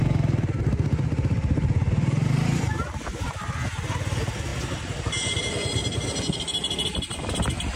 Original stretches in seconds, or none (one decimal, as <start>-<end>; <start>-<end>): 0.0-7.8